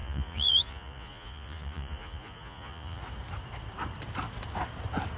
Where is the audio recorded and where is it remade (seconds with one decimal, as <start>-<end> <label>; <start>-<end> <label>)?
0.0-3.0 remade; 3.0-5.2 recorded